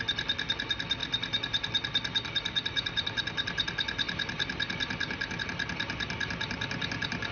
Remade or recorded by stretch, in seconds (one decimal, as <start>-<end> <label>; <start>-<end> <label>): 0.0-7.3 recorded